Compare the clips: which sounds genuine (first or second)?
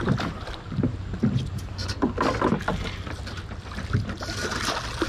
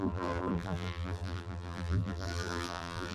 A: first